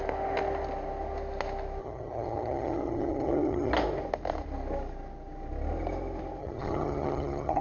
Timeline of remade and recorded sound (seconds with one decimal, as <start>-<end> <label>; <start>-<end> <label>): 0.0-1.8 recorded; 1.8-3.7 remade; 3.7-6.4 recorded; 6.4-7.6 remade